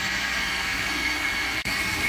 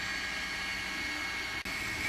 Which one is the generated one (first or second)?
first